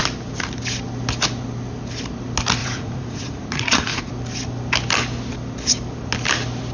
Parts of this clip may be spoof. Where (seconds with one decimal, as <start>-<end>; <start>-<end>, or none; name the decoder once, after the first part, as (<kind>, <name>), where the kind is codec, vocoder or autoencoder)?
2.6-4.1 (vocoder, Vocos)